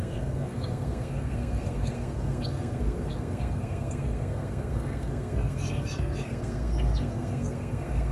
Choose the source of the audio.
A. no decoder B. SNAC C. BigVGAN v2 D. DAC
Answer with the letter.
B